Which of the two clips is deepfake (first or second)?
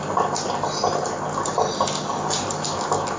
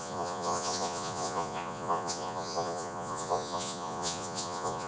second